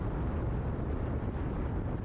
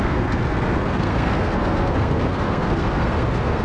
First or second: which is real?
first